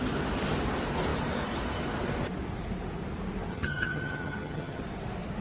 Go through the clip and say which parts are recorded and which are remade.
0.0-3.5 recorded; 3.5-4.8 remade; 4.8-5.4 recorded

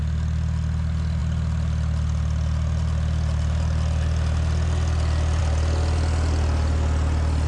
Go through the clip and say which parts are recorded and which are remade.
0.0-7.5 recorded